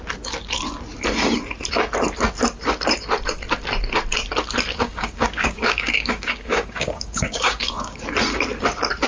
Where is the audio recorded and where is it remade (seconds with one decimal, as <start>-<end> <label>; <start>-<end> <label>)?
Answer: 0.0-4.7 recorded; 4.7-8.0 remade; 8.0-9.1 recorded